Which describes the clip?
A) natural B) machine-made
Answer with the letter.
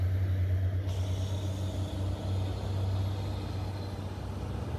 A